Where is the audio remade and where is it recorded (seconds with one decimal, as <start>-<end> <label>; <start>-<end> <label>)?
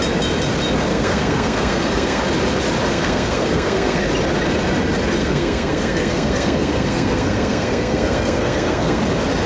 0.0-0.9 recorded; 0.9-2.2 remade; 2.2-2.9 recorded; 2.9-4.0 remade; 4.0-5.2 recorded; 5.2-9.0 remade; 9.0-9.5 recorded